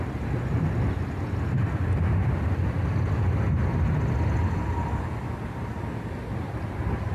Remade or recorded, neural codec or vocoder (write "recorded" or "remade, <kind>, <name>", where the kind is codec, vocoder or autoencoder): recorded